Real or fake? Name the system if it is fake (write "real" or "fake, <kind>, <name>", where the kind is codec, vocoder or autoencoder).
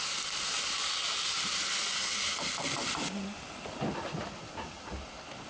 real